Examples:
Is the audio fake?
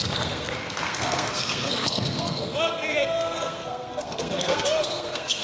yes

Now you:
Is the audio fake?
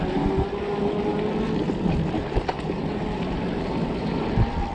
no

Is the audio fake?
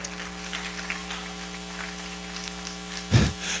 no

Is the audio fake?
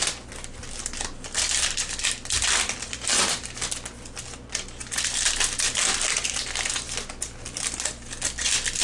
no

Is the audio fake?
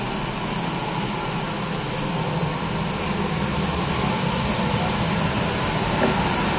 no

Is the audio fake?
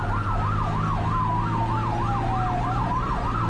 no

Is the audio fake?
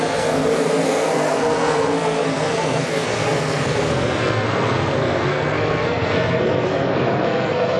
yes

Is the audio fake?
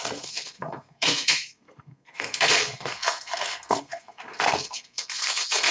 yes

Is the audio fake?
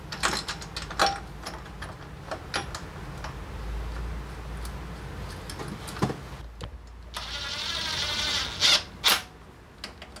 no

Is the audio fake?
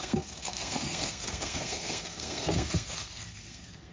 yes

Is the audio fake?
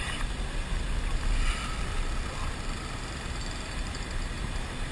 no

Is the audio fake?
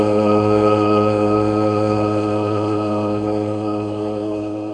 yes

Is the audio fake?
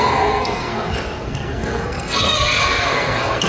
yes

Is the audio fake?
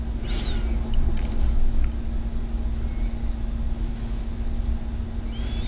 no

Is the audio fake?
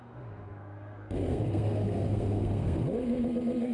yes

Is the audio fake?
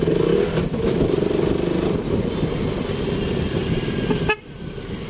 no